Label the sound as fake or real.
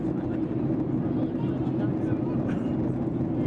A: real